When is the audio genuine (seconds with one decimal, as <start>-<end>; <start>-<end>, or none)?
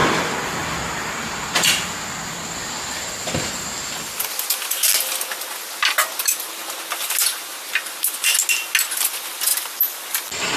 3.9-9.5; 10.0-10.6